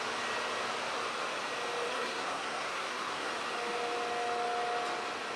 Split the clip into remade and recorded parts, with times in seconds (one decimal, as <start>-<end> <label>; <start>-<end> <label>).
0.0-1.9 recorded; 1.9-3.3 remade; 3.3-5.4 recorded